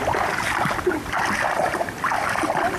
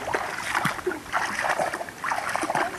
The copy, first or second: first